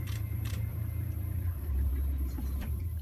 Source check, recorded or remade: remade